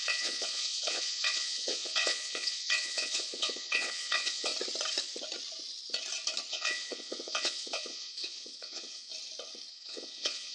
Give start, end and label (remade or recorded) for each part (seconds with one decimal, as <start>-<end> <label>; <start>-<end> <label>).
0.0-4.5 remade; 4.5-6.5 recorded; 6.5-9.1 remade; 9.1-9.7 recorded; 9.7-10.5 remade